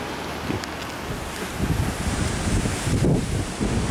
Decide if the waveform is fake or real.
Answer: real